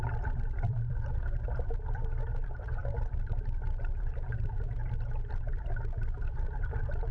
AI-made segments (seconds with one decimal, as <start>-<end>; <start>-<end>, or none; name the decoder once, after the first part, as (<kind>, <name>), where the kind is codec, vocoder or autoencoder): 0.0-4.8 (vocoder, BigVGAN v2); 5.3-7.1